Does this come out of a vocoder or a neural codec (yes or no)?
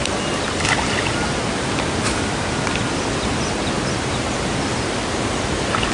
no